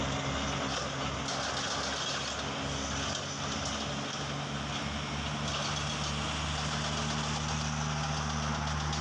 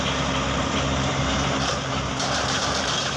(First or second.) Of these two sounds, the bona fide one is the first